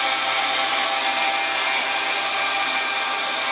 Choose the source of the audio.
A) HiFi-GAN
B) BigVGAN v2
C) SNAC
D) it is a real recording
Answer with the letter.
D